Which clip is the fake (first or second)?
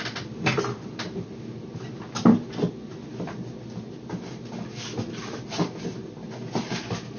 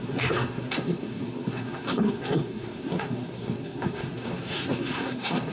second